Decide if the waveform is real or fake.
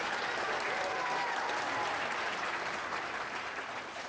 real